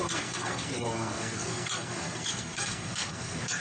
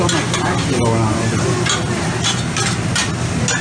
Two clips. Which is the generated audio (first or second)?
first